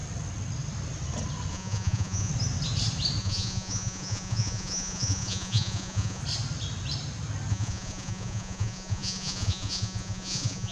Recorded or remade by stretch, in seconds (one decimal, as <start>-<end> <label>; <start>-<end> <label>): 0.0-1.5 recorded; 1.5-2.3 remade; 2.3-3.2 recorded; 3.2-6.2 remade; 6.2-7.5 recorded; 7.5-10.7 remade